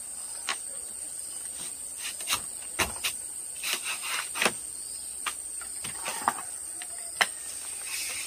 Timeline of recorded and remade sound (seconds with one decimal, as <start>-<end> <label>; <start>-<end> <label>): 0.0-8.3 recorded